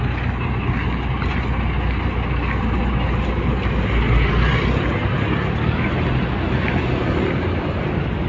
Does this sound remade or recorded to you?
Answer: recorded